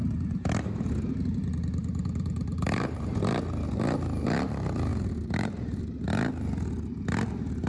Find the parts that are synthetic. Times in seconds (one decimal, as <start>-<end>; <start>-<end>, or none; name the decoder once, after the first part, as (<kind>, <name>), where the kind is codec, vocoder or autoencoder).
0.0-3.2 (vocoder, BigVGAN v2); 4.9-5.8